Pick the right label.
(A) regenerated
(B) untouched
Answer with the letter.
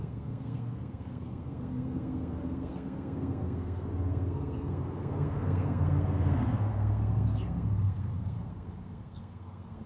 A